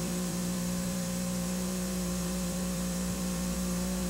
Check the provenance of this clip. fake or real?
fake